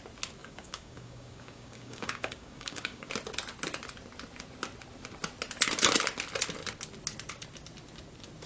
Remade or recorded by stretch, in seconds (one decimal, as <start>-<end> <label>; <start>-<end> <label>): 0.0-0.4 recorded; 0.4-3.1 remade; 3.1-8.5 recorded